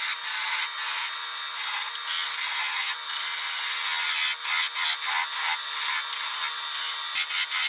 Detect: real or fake real